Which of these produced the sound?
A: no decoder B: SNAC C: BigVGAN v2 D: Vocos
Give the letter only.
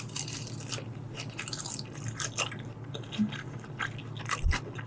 A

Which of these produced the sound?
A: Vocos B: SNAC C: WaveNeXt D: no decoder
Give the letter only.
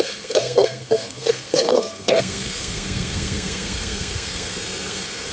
B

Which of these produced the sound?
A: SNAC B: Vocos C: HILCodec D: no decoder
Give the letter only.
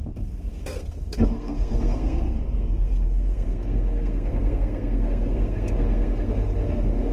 A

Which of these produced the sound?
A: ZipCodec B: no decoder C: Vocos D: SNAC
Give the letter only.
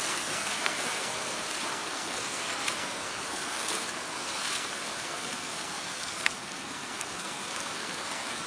D